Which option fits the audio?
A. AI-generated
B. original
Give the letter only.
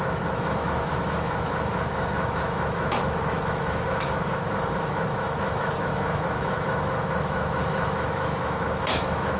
A